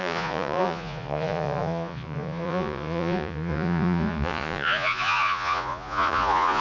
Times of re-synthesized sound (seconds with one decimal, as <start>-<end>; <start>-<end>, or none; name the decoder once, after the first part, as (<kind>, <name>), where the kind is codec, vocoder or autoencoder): 0.0-6.6 (vocoder, Vocos)